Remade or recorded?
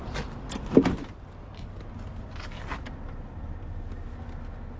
recorded